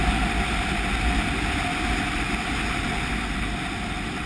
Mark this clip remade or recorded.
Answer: recorded